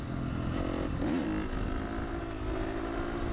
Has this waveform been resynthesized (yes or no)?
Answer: no